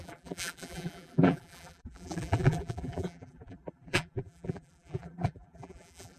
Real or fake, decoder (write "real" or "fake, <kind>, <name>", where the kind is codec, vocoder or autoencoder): fake, vocoder, BigVGAN v2